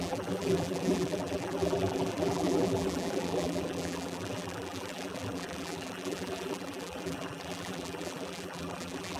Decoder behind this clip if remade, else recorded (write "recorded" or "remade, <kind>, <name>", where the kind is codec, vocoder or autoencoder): remade, vocoder, BigVGAN v2